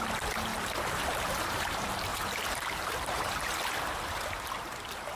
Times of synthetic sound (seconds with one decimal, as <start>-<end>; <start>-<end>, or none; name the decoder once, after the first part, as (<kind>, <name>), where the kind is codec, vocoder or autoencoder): 2.1-3.5 (vocoder, BigVGAN v2)